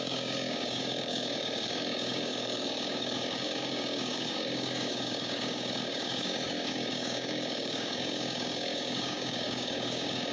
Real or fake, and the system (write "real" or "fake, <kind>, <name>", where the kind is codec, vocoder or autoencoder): fake, codec, DAC